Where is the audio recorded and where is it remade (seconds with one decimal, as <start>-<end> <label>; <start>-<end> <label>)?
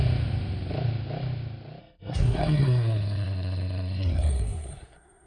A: 0.0-1.8 recorded; 1.8-5.3 remade